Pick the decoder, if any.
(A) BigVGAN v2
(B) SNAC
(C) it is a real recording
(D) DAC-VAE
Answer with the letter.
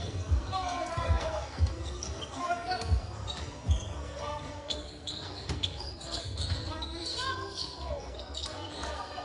B